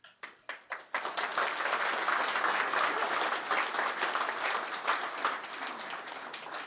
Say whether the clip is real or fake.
real